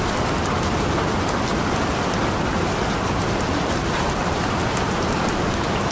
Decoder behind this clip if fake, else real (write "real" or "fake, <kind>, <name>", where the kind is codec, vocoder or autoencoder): real